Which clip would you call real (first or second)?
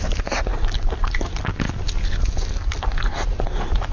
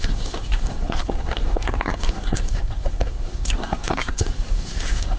first